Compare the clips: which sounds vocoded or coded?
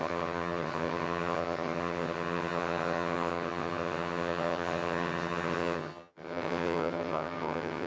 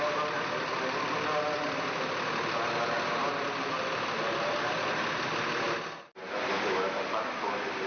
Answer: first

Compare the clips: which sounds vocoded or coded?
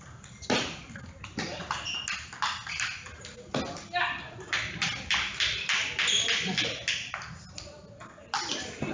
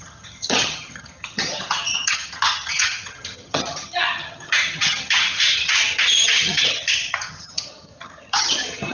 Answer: second